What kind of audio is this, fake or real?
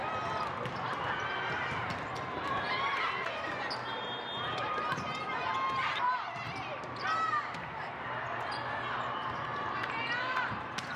real